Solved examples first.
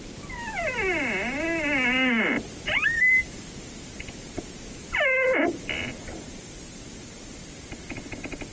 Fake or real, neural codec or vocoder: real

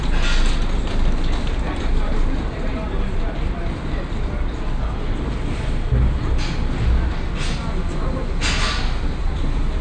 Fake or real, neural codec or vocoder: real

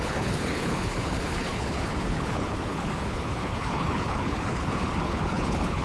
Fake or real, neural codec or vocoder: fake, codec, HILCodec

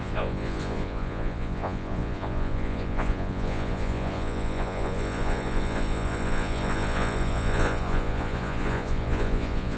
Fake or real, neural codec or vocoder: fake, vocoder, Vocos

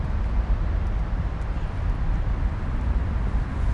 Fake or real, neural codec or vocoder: real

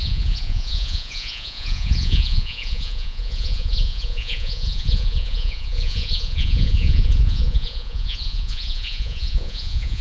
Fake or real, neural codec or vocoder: fake, vocoder, Vocos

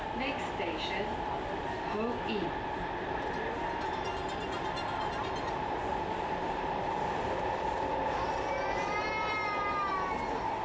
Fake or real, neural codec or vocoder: real